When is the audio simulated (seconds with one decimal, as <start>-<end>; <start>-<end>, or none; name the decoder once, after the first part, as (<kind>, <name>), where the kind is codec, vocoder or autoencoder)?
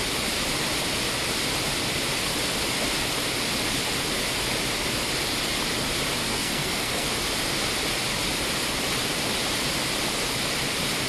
6.2-7.1 (codec, SNAC)